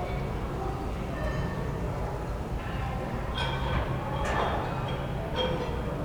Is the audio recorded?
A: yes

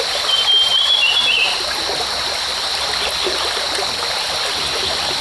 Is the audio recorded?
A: yes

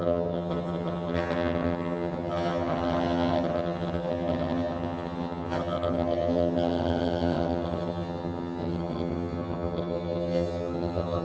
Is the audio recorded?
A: no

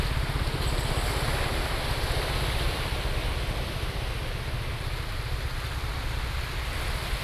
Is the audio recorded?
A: yes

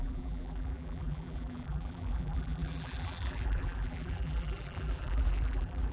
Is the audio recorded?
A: no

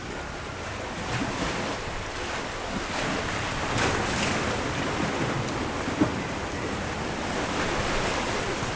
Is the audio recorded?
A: yes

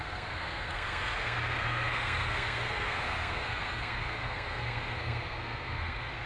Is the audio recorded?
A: no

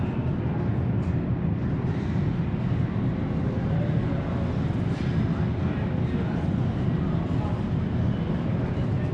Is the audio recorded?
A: yes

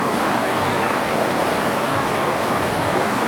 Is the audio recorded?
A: no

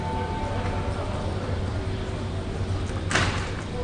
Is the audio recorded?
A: yes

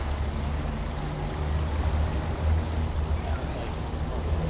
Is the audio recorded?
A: yes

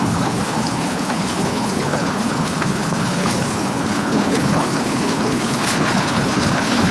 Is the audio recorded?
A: no